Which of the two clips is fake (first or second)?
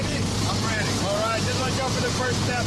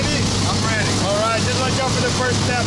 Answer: first